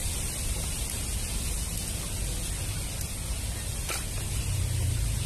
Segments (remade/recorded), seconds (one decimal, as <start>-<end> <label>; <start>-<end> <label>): 0.0-5.3 recorded